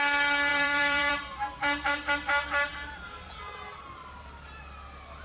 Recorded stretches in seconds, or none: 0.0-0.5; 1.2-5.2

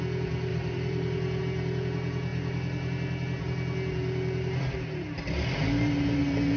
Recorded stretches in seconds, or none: 0.0-0.5; 1.4-6.6

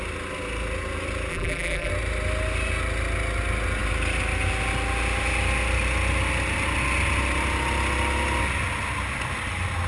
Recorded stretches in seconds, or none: 0.0-1.3; 1.9-9.9

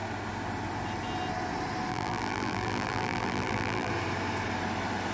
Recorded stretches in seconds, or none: 0.0-1.9; 3.9-5.1

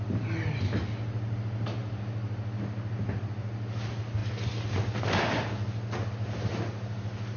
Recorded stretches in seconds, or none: 0.0-7.4

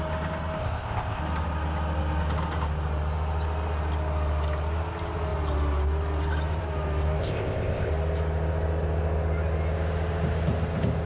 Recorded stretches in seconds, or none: 0.0-0.6; 1.2-7.2; 7.9-11.1

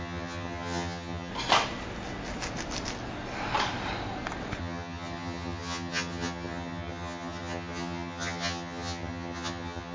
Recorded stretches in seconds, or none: 1.3-4.6

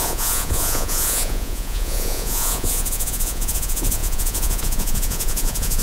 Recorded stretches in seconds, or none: none